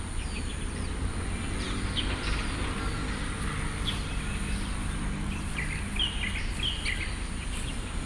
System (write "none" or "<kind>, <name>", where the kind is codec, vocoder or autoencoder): none